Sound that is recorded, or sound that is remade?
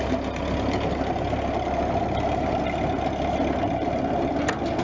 recorded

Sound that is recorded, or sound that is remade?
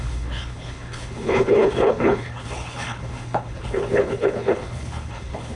remade